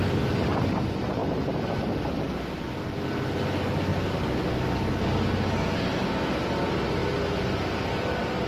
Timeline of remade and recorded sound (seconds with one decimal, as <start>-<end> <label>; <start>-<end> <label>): 0.0-8.5 recorded

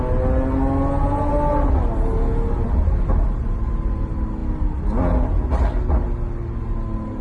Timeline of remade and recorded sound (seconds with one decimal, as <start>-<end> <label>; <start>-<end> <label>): 0.0-7.2 recorded

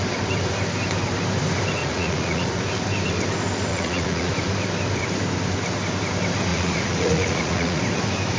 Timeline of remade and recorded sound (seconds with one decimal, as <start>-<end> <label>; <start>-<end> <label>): 0.0-1.8 recorded; 1.8-2.5 remade; 2.5-3.7 recorded; 3.7-4.3 remade; 4.3-6.5 recorded; 6.5-7.8 remade; 7.8-8.4 recorded

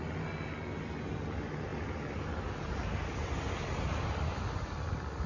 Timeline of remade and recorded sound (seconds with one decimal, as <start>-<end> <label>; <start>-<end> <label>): 0.0-5.3 recorded